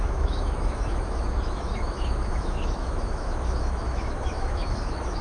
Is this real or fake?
fake